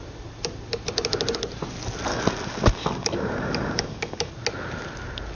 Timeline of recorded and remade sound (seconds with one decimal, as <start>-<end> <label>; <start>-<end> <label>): 0.0-2.1 recorded; 2.1-4.3 remade; 4.3-5.3 recorded